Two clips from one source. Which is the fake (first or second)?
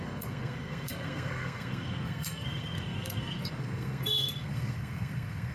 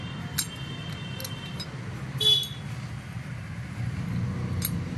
first